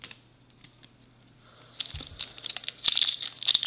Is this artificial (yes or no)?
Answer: no